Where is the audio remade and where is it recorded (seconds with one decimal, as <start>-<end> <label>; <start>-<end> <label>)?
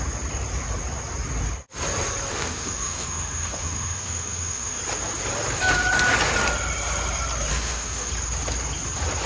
0.0-2.3 recorded; 2.3-4.8 remade; 4.8-7.5 recorded; 7.5-8.1 remade; 8.1-9.3 recorded